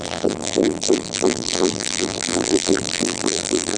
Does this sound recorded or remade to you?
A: remade